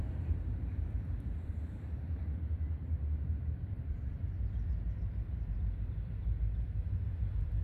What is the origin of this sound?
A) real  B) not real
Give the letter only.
B